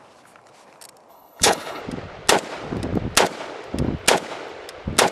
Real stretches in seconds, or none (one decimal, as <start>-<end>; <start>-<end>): 0.0-1.1; 1.8-5.1

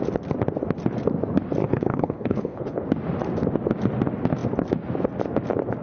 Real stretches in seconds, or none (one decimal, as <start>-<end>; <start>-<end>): 0.0-1.6; 2.7-5.8

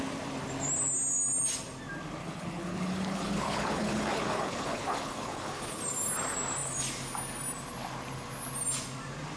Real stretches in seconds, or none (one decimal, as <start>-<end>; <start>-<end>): 0.0-2.2; 5.8-9.4

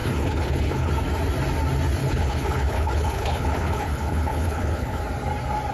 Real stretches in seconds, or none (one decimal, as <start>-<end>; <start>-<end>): 0.9-2.0; 5.0-5.7

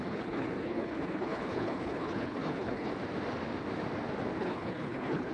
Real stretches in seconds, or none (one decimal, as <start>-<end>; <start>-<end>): 2.9-4.4

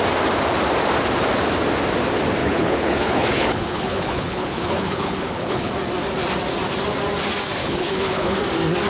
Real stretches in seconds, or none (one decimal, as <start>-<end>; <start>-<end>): 0.0-2.4; 5.7-7.6; 8.4-8.9

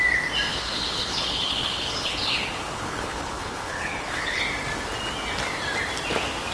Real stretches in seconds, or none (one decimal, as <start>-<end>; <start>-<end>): 0.0-0.5; 4.4-6.5